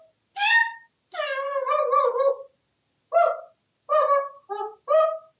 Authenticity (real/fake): real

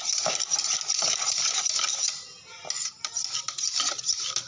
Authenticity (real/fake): real